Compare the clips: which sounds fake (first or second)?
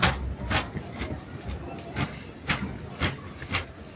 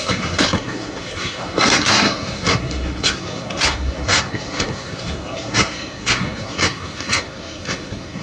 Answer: second